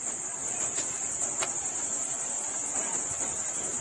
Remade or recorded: recorded